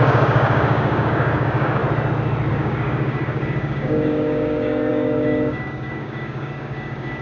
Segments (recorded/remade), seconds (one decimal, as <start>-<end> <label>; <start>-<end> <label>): 0.0-1.8 remade; 1.8-2.5 recorded; 2.5-7.2 remade